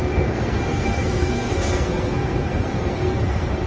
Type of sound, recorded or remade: remade